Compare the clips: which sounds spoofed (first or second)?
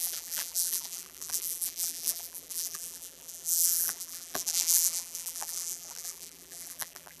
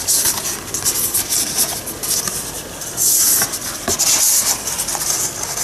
first